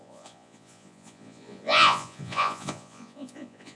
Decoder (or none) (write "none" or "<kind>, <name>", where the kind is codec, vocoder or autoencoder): vocoder, Vocos